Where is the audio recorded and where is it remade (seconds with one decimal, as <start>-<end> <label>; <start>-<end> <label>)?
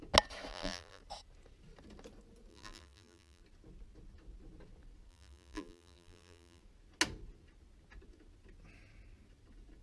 0.0-0.5 recorded; 0.5-1.0 remade; 1.0-2.5 recorded; 2.5-3.4 remade; 3.4-5.1 recorded; 5.1-6.6 remade; 6.6-9.8 recorded